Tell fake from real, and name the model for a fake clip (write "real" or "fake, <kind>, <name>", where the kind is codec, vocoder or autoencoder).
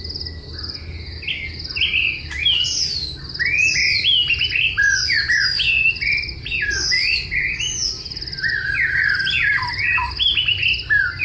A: real